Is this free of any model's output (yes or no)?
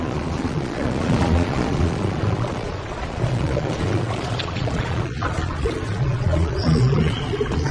no